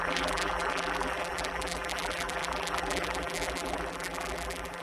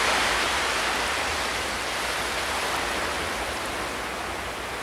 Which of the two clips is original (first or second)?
second